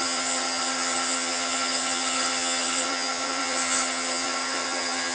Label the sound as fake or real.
fake